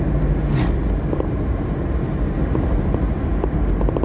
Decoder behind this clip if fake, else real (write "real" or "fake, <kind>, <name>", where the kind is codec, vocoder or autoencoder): real